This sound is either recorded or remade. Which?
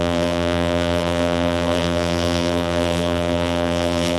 remade